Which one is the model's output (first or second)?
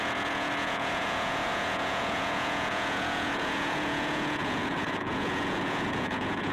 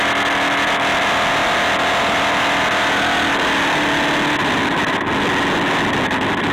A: first